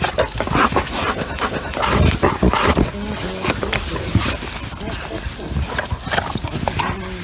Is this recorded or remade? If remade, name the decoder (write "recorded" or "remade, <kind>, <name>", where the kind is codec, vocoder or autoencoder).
recorded